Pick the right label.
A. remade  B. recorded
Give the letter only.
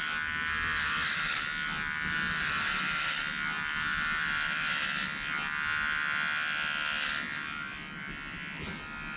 B